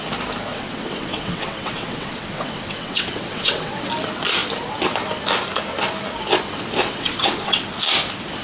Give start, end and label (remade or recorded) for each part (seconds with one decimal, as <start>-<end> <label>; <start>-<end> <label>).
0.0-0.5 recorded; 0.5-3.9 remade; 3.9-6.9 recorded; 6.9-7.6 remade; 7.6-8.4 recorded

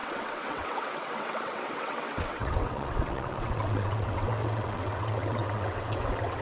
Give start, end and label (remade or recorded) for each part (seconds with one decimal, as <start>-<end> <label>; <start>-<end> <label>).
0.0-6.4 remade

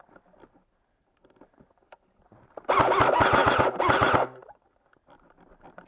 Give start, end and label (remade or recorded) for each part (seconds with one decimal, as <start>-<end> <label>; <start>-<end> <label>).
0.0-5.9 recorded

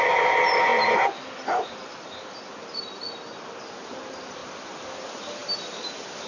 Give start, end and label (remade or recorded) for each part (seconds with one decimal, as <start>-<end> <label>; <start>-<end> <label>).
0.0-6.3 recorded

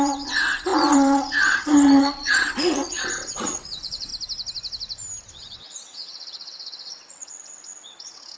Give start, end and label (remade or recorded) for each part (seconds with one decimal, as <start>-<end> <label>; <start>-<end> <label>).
0.0-4.1 remade; 4.1-5.3 recorded; 5.3-8.4 remade

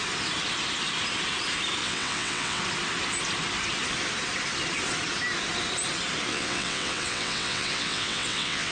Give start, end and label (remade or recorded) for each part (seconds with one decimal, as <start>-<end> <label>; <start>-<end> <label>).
0.0-1.8 recorded; 1.8-2.6 remade; 2.6-6.3 recorded; 6.3-8.7 remade